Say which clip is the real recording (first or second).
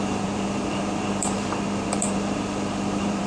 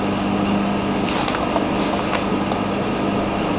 second